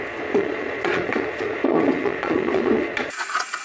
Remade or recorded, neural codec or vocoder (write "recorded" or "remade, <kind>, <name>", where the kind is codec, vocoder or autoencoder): remade, vocoder, Vocos